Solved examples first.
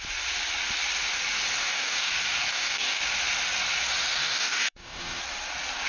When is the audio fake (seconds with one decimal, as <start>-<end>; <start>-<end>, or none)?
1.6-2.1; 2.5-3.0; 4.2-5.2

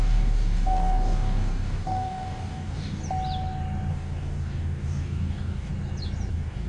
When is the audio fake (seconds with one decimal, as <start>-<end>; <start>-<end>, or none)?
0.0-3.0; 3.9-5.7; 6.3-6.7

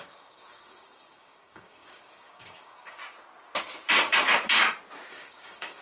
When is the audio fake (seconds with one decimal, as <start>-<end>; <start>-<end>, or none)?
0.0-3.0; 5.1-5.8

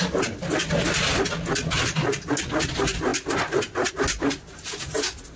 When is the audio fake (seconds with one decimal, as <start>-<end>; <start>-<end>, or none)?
none

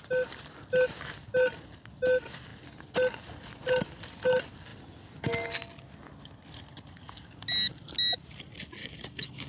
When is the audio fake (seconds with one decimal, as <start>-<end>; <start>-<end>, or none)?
8.8-9.5

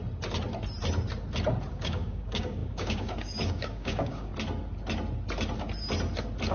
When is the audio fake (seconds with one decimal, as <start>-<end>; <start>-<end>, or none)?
1.7-4.3